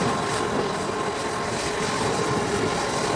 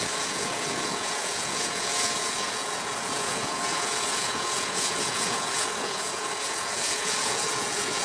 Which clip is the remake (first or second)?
second